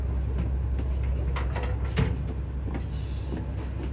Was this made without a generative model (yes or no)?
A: yes